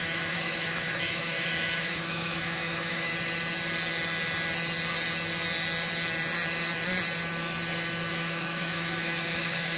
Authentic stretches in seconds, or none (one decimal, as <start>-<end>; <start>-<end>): 3.1-8.1